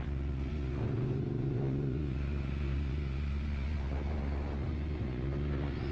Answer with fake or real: fake